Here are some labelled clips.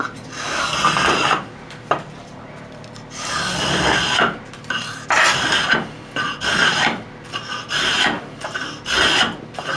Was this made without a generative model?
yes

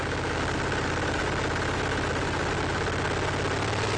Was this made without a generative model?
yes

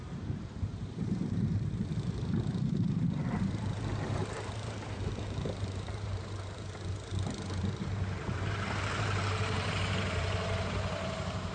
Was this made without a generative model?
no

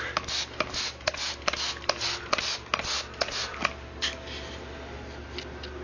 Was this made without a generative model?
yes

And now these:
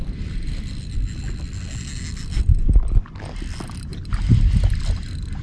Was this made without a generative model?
yes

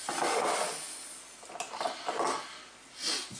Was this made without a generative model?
yes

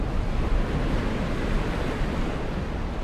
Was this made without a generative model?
yes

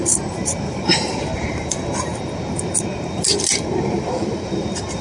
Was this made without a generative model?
no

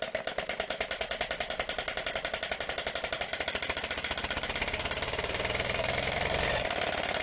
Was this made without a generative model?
yes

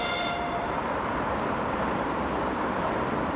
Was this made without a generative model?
no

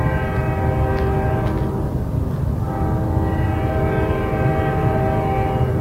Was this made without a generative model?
yes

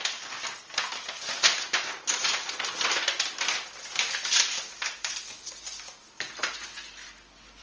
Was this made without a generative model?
yes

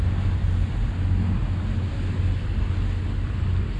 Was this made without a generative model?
yes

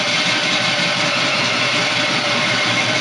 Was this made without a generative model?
yes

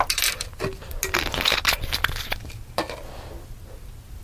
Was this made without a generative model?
yes